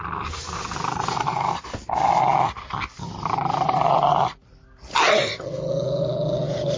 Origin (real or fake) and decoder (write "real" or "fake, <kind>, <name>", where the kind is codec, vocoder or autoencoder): real